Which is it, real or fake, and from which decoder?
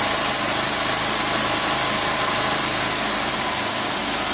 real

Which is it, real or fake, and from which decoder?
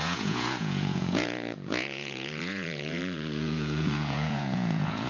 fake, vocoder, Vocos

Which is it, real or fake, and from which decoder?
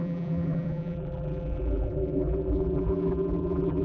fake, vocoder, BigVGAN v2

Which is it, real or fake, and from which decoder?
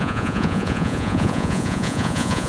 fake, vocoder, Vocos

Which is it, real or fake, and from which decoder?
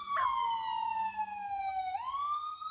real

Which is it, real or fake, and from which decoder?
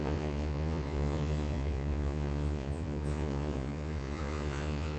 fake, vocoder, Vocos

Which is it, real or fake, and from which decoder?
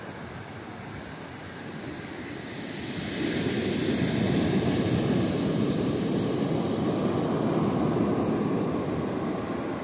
real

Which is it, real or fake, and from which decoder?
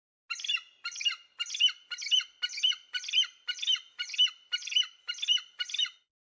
real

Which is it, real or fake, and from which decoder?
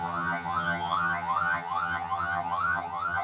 fake, vocoder, HiFi-GAN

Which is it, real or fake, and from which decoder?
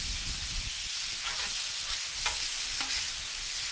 real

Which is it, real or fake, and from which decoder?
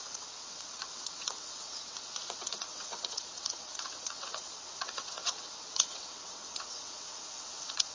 fake, vocoder, WaveNeXt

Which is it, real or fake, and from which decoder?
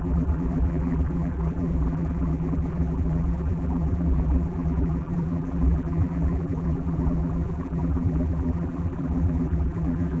fake, vocoder, BigVGAN v2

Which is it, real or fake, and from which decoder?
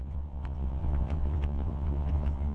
fake, vocoder, WaveNeXt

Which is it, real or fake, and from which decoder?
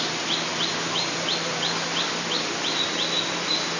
real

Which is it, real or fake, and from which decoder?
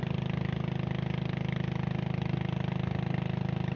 real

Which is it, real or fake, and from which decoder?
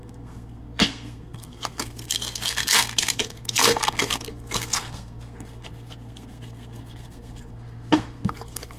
fake, codec, SNAC